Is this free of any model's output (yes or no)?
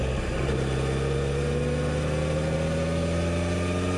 yes